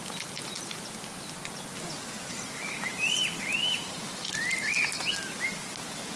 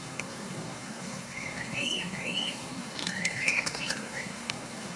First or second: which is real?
first